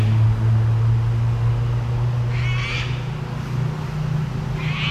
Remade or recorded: recorded